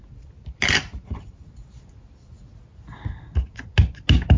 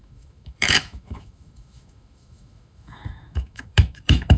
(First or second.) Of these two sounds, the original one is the first